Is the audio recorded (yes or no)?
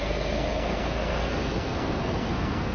no